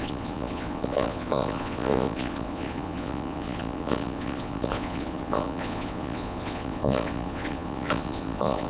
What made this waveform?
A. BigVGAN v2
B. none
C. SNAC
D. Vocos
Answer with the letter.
D